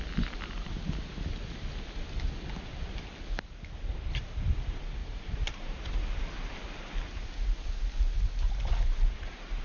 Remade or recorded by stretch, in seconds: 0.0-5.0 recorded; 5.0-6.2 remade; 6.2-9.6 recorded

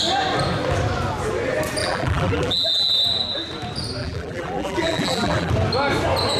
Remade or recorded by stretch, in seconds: 0.0-1.8 recorded; 1.8-2.9 remade; 2.9-4.0 recorded; 4.0-5.5 remade; 5.5-6.4 recorded

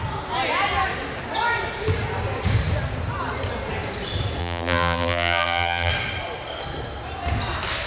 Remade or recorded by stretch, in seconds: 0.0-4.4 recorded; 4.4-5.9 remade; 5.9-7.9 recorded

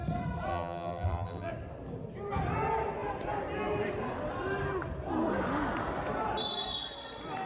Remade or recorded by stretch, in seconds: 0.0-0.5 recorded; 0.5-1.5 remade; 1.5-7.5 recorded

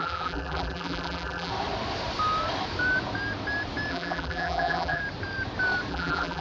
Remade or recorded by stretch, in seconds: 0.0-1.5 remade; 1.5-3.9 recorded; 3.9-5.0 remade; 5.0-5.9 recorded; 5.9-6.4 remade

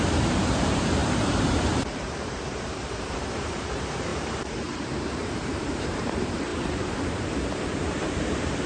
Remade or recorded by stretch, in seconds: 0.0-8.7 remade

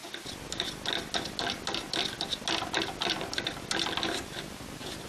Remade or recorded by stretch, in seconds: 0.0-5.1 recorded

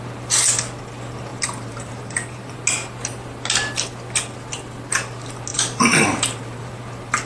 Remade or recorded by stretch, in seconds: 0.0-1.3 recorded; 1.3-2.6 remade; 2.6-5.5 recorded; 5.5-6.8 remade; 6.8-7.3 recorded